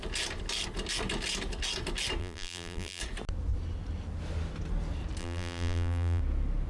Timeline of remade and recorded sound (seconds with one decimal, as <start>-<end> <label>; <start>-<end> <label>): 0.0-2.2 recorded; 2.2-3.0 remade; 3.0-5.2 recorded; 5.2-6.2 remade; 6.2-6.7 recorded